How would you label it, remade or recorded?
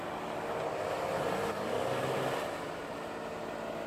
recorded